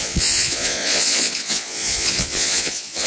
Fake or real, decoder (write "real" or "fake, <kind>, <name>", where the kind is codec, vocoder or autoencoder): fake, vocoder, Vocos